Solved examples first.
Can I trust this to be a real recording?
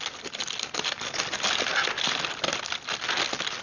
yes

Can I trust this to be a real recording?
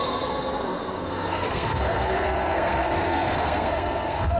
no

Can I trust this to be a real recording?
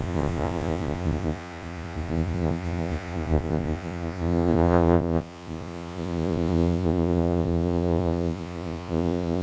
no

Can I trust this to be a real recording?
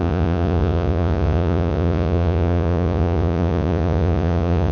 no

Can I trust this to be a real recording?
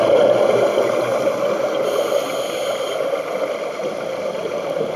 yes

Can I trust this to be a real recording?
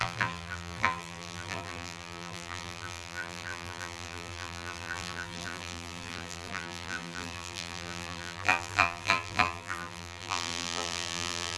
no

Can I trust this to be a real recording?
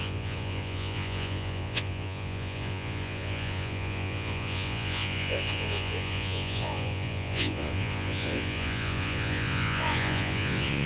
no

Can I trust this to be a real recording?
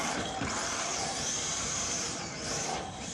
no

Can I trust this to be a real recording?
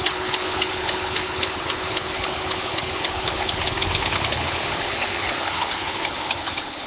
no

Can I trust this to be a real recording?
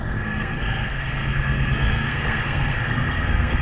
no